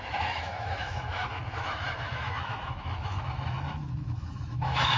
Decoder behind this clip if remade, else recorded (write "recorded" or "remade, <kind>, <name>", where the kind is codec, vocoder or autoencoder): remade, autoencoder, DAC-VAE